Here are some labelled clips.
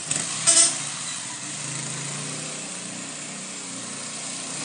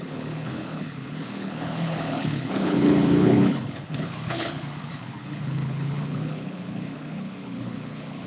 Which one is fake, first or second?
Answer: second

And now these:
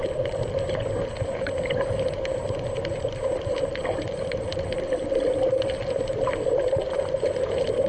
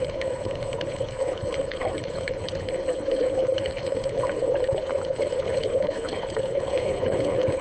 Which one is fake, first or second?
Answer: second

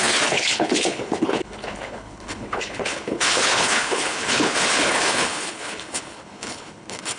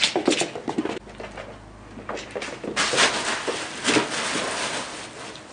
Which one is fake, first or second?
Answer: first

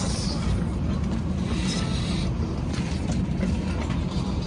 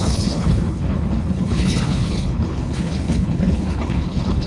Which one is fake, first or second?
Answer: second